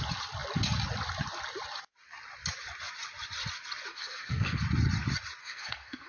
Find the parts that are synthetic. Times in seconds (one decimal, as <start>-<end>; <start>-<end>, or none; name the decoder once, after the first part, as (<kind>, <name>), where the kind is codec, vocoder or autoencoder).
3.9-4.6 (codec, SNAC); 5.4-6.1